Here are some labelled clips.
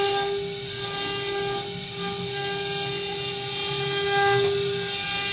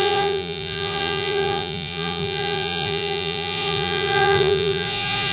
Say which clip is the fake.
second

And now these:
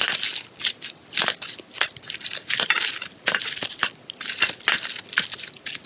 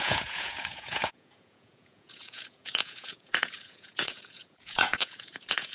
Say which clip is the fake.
second